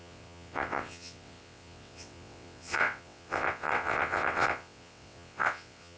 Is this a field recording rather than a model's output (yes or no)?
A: no